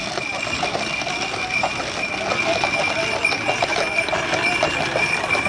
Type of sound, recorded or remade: recorded